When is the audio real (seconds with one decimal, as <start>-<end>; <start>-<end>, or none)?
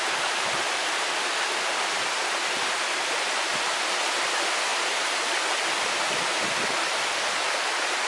0.0-4.7; 6.0-8.1